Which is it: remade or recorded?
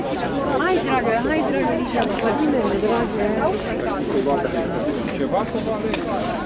recorded